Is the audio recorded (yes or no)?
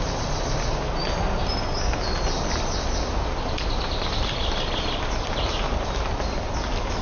yes